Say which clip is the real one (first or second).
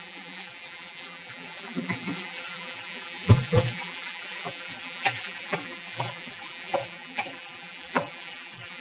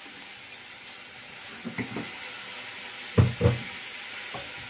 second